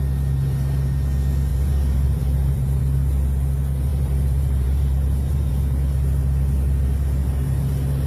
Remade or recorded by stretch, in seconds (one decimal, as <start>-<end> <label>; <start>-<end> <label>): 0.0-1.5 recorded; 1.5-2.8 remade; 2.8-3.9 recorded; 3.9-5.5 remade; 5.5-8.1 recorded